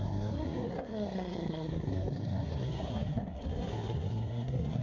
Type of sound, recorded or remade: remade